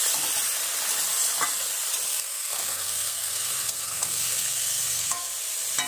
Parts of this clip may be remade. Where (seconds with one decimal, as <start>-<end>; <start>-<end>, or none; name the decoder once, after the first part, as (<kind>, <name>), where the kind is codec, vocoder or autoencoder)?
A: 2.1-5.3 (codec, SNAC)